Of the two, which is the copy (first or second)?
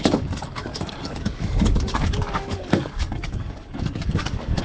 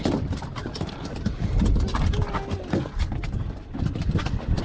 first